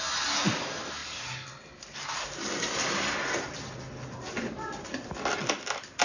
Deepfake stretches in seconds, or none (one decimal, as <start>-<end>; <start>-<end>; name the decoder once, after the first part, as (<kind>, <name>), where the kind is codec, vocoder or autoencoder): none